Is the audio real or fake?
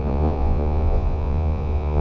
fake